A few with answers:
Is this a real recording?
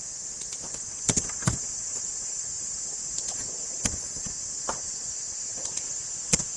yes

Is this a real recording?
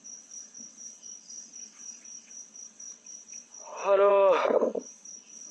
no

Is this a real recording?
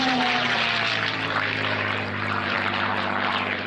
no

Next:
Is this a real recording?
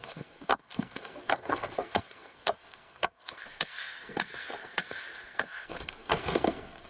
no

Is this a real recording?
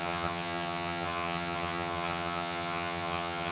no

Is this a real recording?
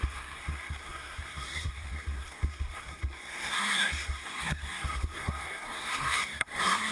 no